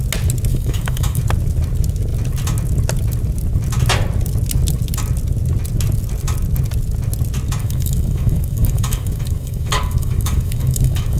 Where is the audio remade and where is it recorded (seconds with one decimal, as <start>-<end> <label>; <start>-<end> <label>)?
0.0-0.5 recorded; 0.5-1.2 remade; 1.2-7.6 recorded; 7.6-11.2 remade